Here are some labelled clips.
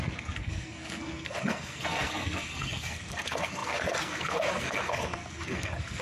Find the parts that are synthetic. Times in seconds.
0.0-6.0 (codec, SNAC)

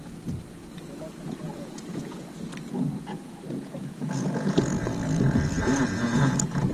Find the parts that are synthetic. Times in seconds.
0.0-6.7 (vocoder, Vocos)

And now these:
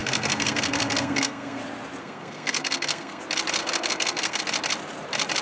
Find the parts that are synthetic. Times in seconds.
0.0-1.6 (codec, SNAC); 2.0-3.2; 3.6-4.4

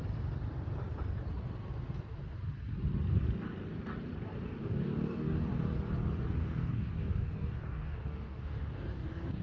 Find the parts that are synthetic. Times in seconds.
4.6-5.5 (codec, DAC); 6.4-9.4

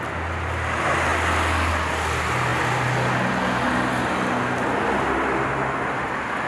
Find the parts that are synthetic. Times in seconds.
none

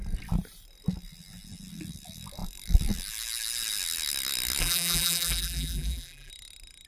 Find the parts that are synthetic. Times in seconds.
4.6-6.3 (vocoder, BigVGAN v2)

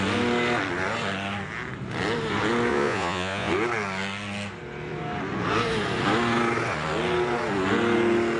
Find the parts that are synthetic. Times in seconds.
2.7-3.5 (vocoder, Vocos)